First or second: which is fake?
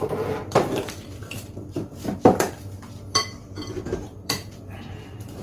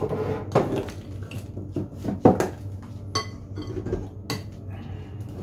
first